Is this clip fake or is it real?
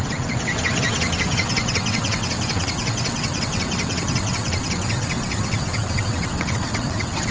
fake